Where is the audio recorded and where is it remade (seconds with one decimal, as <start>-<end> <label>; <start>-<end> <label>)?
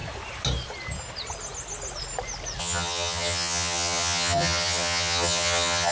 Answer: 0.0-2.6 recorded; 2.6-5.9 remade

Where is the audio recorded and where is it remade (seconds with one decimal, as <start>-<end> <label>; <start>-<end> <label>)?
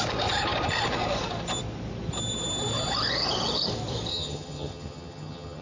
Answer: 0.0-4.1 recorded; 4.1-5.6 remade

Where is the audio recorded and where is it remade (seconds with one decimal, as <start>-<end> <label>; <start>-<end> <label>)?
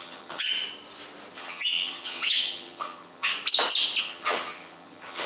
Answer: 0.0-0.5 remade; 0.5-1.3 recorded; 1.3-3.3 remade; 3.3-4.0 recorded; 4.0-5.3 remade